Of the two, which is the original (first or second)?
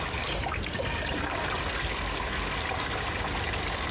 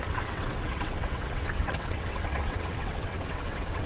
first